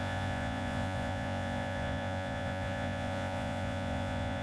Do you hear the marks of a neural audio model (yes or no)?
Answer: yes